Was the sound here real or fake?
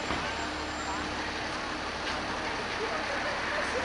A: real